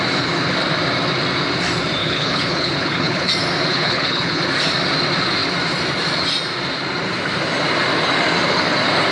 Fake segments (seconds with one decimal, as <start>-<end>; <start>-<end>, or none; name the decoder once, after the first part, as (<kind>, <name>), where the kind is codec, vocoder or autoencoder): 2.0-3.3 (codec, HILCodec); 3.7-4.4